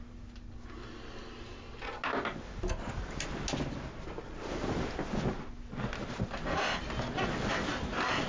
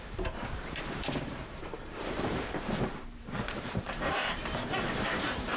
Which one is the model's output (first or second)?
second